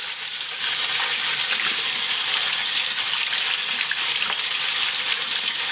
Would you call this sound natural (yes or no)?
yes